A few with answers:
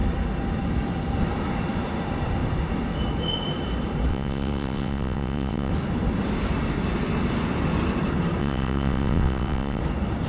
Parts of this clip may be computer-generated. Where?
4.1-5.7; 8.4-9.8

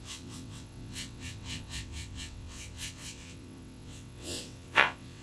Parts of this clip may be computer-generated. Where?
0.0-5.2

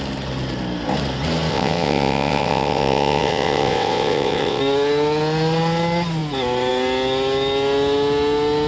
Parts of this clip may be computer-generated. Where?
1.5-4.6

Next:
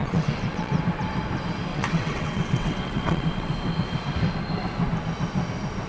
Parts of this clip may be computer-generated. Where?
0.0-0.7; 1.7-3.5

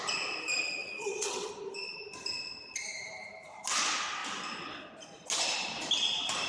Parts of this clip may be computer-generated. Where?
0.8-1.5

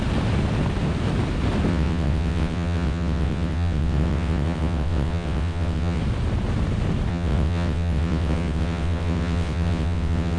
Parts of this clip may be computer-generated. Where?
1.7-6.0; 7.1-10.4

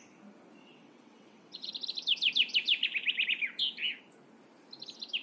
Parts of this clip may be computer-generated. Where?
0.6-1.7